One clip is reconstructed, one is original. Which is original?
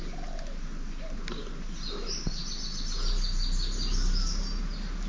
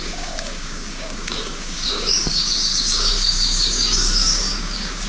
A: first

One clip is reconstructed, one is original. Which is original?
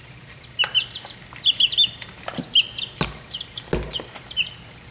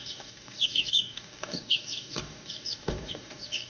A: first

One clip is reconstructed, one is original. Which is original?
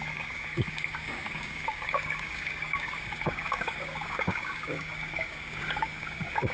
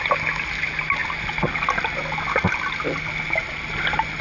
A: second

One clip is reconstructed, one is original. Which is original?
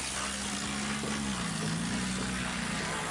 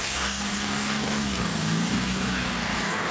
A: first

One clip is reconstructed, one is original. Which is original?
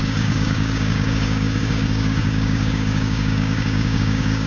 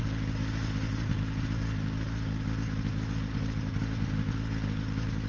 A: second